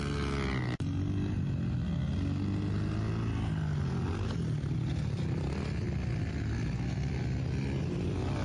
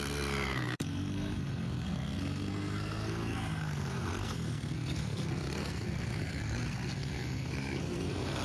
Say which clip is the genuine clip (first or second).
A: first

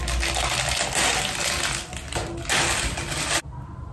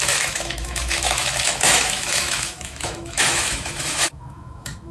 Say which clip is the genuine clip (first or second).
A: first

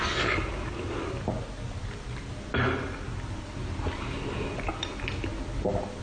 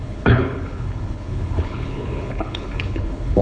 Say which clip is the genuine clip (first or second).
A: first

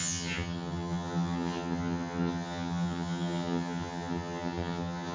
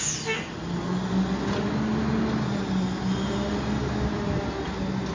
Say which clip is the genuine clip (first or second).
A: second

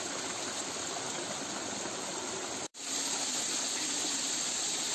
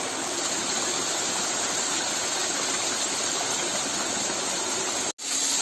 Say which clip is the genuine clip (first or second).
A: second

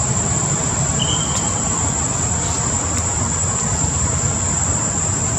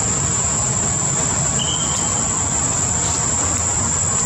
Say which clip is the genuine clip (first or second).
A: second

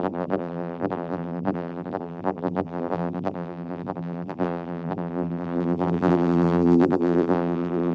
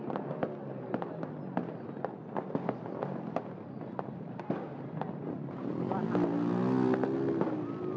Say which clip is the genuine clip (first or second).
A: second